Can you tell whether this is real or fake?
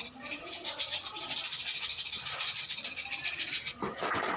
real